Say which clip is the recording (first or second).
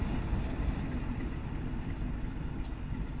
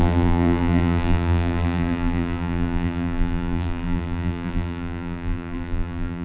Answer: first